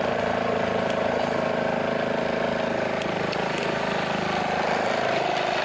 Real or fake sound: real